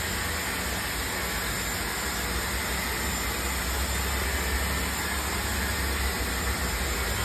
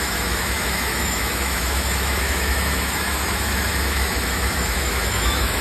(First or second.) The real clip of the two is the first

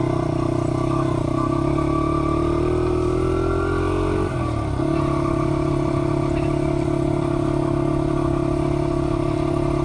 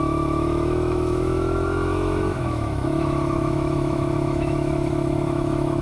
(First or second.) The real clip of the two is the first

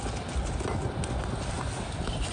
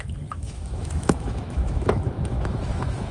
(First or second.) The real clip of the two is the first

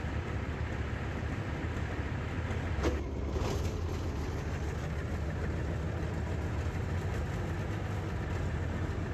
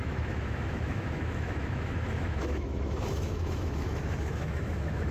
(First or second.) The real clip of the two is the first